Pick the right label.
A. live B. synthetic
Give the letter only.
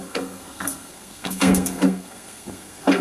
B